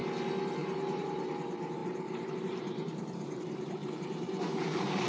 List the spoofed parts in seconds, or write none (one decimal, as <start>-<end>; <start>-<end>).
0.6-5.1